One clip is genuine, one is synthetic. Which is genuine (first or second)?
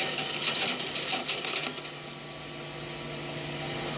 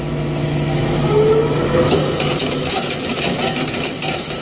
first